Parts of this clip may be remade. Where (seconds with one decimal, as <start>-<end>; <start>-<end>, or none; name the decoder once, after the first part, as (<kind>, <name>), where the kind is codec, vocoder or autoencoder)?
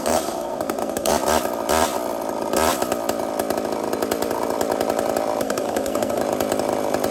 0.0-1.1 (codec, SNAC); 5.4-6.2